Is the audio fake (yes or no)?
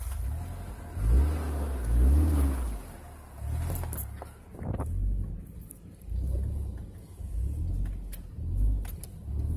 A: no